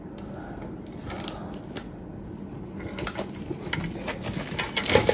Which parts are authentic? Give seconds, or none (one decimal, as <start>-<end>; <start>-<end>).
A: 0.0-5.1